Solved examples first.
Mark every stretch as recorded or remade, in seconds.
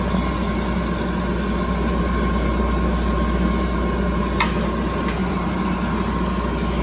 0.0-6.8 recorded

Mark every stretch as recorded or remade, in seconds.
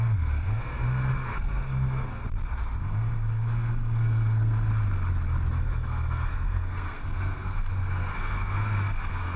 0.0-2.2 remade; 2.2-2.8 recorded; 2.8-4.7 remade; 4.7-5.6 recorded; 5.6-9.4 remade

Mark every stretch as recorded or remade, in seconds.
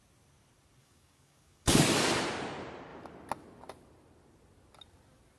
0.0-0.8 recorded; 0.8-2.1 remade; 2.1-5.4 recorded